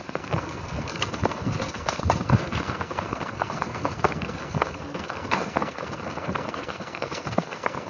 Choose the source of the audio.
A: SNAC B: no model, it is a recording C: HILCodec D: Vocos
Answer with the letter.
A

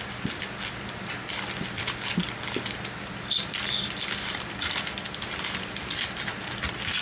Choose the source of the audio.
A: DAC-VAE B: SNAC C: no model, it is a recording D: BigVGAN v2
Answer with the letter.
C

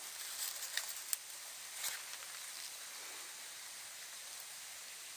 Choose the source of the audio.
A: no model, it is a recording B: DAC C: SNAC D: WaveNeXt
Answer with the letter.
A